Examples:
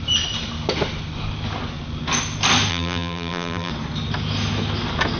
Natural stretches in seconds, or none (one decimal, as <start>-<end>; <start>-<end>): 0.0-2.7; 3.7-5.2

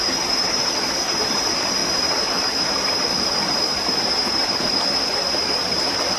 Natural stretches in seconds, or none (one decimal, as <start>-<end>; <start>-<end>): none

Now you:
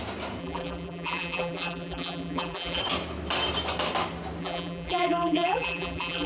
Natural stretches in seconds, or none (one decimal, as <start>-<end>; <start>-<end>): 0.0-0.4; 2.8-4.4